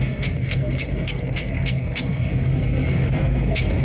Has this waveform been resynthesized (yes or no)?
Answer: yes